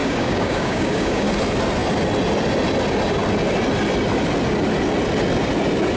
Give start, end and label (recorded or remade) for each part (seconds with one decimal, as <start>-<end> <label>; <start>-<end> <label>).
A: 0.0-1.3 remade; 1.3-6.0 recorded